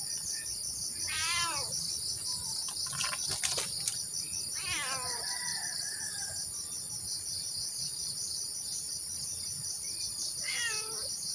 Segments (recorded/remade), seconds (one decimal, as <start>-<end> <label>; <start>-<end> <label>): 0.0-11.3 recorded